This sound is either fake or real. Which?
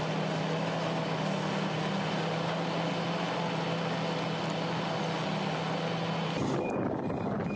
real